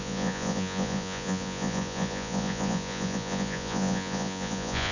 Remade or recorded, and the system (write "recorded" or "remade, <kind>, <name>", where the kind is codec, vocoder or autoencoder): remade, vocoder, Vocos